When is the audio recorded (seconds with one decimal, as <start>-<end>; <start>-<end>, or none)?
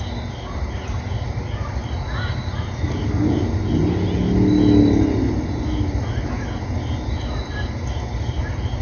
0.0-8.8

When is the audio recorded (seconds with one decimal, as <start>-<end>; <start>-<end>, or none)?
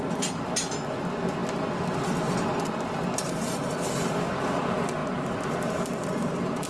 0.0-6.7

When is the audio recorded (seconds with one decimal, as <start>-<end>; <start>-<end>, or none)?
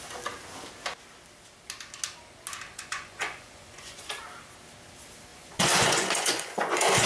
0.0-2.7; 4.1-5.3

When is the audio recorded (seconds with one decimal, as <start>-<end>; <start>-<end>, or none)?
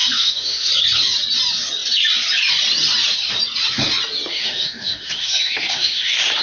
0.7-4.3